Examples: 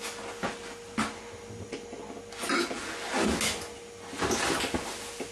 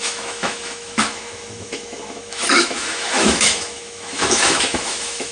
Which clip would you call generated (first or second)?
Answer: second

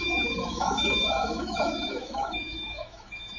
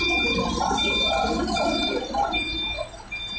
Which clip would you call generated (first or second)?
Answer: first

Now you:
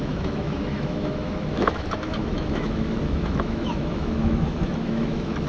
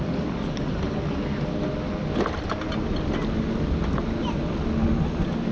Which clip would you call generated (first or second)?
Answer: first